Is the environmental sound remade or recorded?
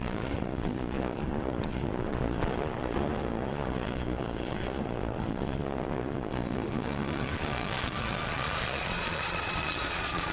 remade